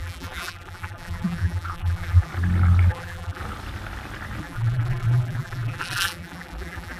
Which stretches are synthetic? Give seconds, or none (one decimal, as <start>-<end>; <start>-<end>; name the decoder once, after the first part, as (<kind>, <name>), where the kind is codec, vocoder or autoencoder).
0.0-2.3 (vocoder, BigVGAN v2); 2.9-3.4; 4.4-7.0